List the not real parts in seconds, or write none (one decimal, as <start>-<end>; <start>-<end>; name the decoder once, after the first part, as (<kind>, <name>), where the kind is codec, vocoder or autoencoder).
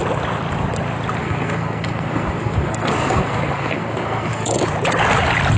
1.2-4.6 (codec, SNAC)